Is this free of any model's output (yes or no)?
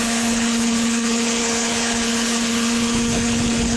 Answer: no